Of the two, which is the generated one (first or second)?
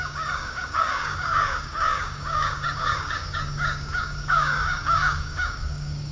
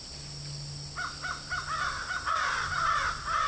first